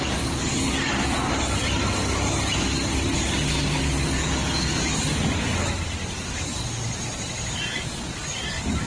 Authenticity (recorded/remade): recorded